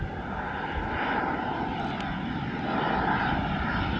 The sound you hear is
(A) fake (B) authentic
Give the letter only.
B